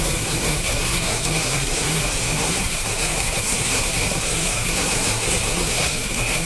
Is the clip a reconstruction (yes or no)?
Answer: yes